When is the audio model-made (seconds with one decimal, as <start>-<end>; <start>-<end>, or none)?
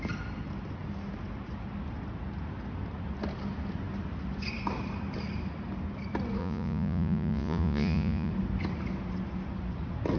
6.4-8.3